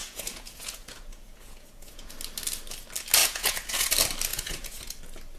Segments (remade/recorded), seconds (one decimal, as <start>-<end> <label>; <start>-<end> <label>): 0.0-2.1 remade; 2.1-3.2 recorded; 3.2-3.9 remade; 3.9-4.3 recorded; 4.3-5.0 remade; 5.0-5.4 recorded